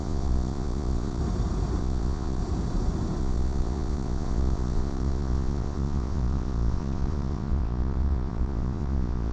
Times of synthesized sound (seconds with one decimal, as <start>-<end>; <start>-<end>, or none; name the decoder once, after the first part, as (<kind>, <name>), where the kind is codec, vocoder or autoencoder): 0.0-1.2 (vocoder, Vocos); 1.8-2.4; 3.2-9.3